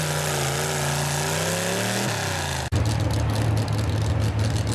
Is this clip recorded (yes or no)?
yes